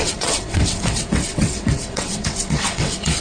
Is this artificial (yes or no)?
yes